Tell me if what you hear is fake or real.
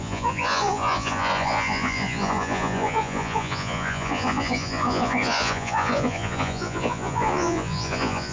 fake